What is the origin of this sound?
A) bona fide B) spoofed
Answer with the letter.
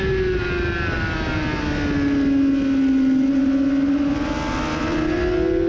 A